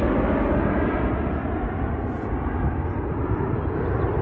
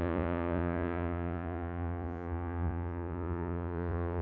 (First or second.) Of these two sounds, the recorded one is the first